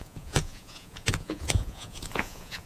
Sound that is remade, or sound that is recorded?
remade